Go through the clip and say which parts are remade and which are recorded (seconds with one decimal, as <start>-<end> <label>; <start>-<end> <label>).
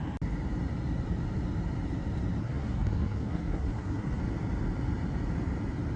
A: 0.0-2.4 recorded; 2.4-4.2 remade; 4.2-6.0 recorded